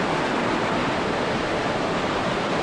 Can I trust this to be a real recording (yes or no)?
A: yes